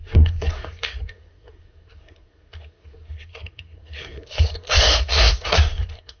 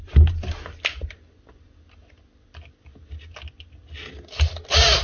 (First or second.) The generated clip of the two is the first